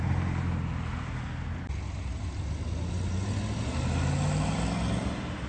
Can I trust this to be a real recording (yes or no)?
yes